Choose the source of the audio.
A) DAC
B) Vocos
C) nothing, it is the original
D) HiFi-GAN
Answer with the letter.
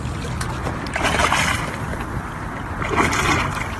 C